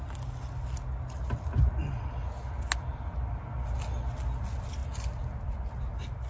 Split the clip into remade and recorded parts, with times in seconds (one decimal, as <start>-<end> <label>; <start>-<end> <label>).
0.0-6.3 recorded